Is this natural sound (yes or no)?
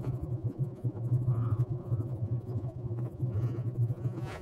no